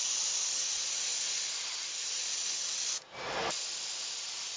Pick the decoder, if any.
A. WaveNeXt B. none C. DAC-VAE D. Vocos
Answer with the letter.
B